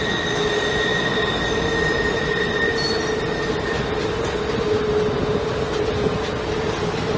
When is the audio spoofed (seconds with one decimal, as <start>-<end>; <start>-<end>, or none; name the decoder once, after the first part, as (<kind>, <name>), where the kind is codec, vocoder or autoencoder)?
none